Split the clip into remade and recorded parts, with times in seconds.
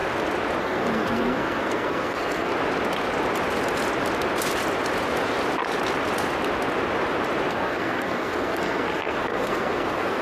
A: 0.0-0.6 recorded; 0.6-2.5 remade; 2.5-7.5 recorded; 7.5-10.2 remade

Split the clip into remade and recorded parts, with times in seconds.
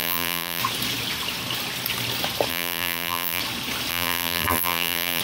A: 0.0-0.6 remade; 0.6-2.5 recorded; 2.5-3.4 remade; 3.4-3.9 recorded; 3.9-5.2 remade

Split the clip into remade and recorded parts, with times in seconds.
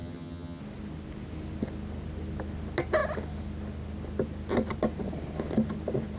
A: 0.0-0.6 remade; 0.6-6.2 recorded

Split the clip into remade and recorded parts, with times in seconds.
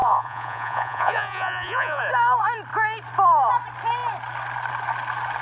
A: 0.0-2.0 remade; 2.0-5.4 recorded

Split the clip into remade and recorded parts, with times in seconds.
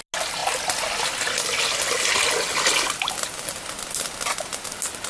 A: 0.0-5.1 recorded